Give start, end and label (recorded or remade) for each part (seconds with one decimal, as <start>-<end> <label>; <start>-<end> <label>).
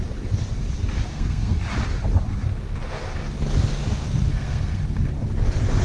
0.0-1.1 recorded; 1.1-1.6 remade; 1.6-4.3 recorded; 4.3-4.8 remade; 4.8-5.8 recorded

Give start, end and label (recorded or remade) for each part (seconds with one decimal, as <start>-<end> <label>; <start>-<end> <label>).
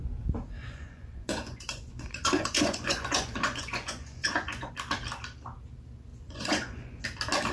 0.0-0.6 recorded; 0.6-4.7 remade; 4.7-6.1 recorded; 6.1-7.0 remade; 7.0-7.5 recorded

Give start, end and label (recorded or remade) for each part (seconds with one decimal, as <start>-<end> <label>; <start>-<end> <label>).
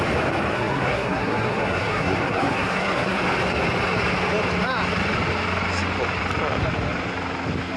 0.0-0.5 recorded; 0.5-3.2 remade; 3.2-7.8 recorded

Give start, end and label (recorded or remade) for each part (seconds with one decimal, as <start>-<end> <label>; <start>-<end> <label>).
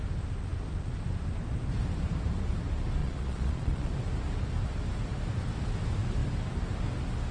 0.0-3.0 recorded; 3.0-3.9 remade; 3.9-7.3 recorded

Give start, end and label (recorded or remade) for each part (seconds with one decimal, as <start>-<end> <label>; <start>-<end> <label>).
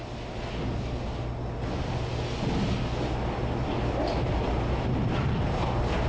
0.0-6.1 recorded